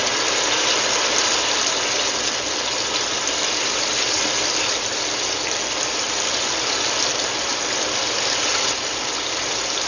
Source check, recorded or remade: recorded